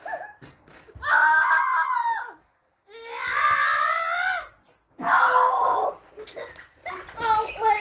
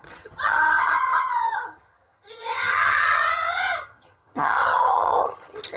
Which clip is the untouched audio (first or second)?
first